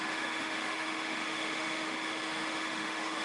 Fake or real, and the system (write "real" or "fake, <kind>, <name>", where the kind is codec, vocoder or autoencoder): fake, autoencoder, DAC-VAE